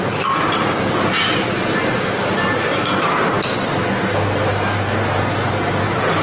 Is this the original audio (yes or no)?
yes